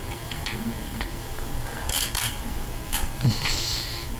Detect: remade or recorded remade